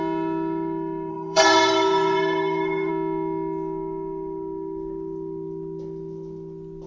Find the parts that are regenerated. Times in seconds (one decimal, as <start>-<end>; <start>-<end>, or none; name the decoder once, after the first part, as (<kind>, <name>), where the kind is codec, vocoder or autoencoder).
1.1-2.9 (codec, SNAC)